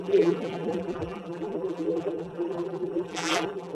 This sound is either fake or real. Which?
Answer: fake